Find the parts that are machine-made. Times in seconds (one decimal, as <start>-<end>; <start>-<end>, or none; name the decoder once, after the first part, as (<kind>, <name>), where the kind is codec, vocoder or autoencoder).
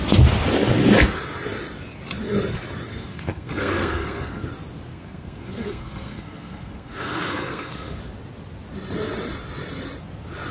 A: 2.9-4.5 (codec, SNAC); 4.9-8.0